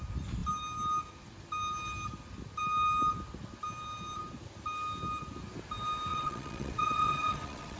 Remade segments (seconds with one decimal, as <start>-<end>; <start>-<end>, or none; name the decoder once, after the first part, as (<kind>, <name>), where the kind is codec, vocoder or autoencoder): 6.1-7.8 (vocoder, WaveNeXt)